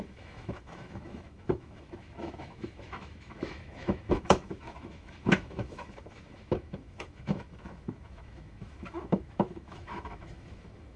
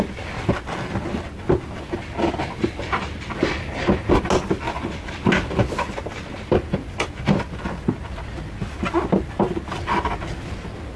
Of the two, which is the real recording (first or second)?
second